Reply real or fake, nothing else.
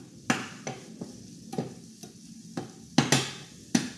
real